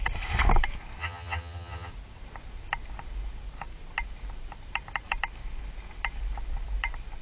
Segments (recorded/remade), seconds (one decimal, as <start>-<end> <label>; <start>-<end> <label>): 0.0-1.0 recorded; 1.0-1.9 remade; 1.9-7.2 recorded